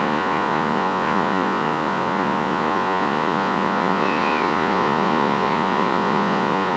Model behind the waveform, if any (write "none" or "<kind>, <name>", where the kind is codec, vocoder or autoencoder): vocoder, Vocos